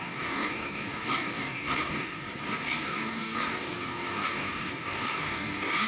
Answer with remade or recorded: remade